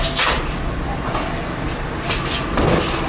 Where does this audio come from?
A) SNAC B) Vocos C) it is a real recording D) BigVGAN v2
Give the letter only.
C